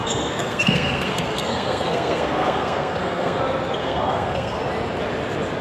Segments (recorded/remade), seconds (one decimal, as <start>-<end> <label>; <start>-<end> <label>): 0.0-3.4 remade; 3.4-3.8 recorded; 3.8-4.6 remade; 4.6-5.6 recorded